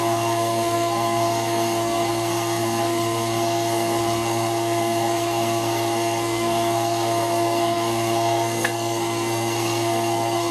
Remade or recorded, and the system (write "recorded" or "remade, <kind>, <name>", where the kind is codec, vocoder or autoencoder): remade, codec, SNAC